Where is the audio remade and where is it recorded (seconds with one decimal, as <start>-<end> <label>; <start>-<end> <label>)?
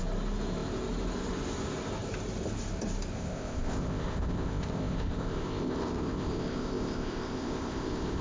0.0-3.1 recorded; 3.1-8.2 remade